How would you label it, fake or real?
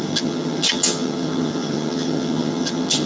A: fake